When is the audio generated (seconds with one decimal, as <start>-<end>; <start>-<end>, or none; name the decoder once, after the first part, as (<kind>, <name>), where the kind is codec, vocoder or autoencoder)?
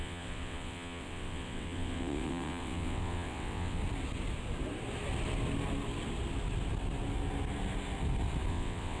0.0-3.8 (vocoder, WaveNeXt); 8.5-9.0